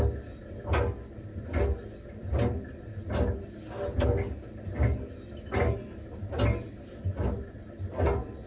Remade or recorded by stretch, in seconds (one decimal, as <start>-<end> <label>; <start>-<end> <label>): 0.0-8.5 recorded